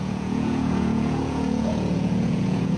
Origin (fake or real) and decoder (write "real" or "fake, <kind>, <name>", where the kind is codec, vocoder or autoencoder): fake, vocoder, Vocos